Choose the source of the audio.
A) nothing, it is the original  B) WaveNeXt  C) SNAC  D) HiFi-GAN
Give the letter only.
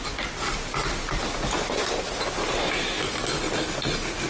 A